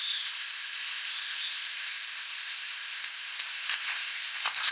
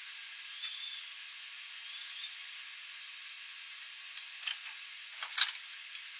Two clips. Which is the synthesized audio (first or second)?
first